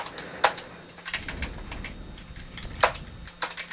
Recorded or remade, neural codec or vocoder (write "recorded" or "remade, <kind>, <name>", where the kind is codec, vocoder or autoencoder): recorded